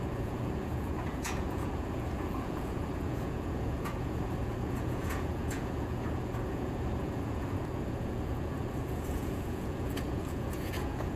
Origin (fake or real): fake